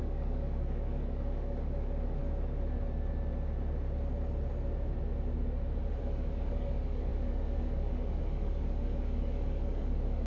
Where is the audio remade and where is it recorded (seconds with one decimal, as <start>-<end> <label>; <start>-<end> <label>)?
0.0-2.2 remade; 2.2-6.0 recorded; 6.0-10.3 remade